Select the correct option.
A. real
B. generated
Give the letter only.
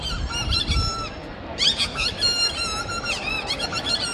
B